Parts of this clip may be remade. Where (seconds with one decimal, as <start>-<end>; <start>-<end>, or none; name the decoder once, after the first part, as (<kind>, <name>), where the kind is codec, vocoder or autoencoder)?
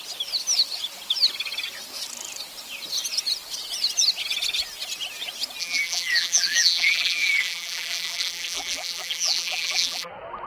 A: 5.6-10.1 (vocoder, BigVGAN v2)